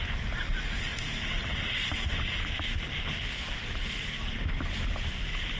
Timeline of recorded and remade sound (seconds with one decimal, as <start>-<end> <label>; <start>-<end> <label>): 0.0-5.6 recorded